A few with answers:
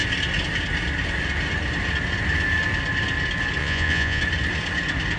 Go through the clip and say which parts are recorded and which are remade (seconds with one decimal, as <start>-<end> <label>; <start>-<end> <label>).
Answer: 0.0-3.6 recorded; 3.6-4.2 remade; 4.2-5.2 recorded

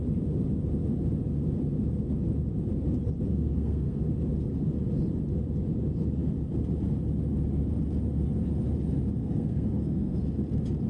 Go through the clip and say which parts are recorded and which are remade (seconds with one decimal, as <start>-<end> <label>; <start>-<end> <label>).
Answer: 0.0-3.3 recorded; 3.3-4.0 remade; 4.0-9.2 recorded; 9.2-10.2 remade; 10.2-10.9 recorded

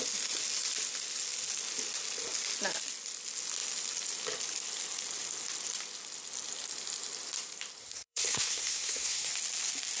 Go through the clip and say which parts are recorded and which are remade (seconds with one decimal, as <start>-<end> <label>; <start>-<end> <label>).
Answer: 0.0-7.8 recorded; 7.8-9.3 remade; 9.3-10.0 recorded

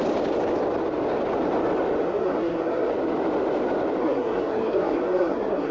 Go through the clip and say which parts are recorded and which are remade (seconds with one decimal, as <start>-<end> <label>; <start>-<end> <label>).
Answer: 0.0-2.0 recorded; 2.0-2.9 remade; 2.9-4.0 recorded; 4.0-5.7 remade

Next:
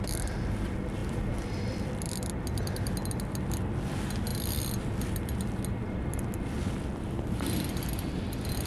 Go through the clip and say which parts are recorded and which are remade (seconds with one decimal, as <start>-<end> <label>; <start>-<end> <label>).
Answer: 0.0-1.0 recorded; 1.0-1.6 remade; 1.6-8.7 recorded

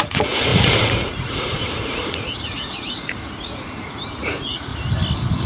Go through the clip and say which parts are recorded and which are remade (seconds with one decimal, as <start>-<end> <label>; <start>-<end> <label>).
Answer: 0.0-4.7 remade; 4.7-5.5 recorded